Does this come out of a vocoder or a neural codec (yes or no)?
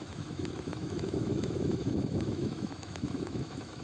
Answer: yes